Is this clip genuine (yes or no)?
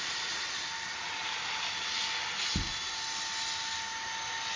yes